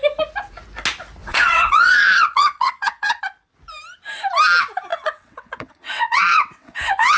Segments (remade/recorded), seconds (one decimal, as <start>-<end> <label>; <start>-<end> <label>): 0.0-1.2 recorded; 1.2-3.2 remade; 3.2-4.9 recorded; 4.9-7.2 remade